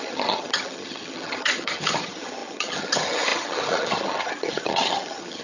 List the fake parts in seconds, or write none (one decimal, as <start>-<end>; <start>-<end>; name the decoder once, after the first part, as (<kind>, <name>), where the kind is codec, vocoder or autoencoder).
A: 0.0-5.4 (vocoder, HiFi-GAN)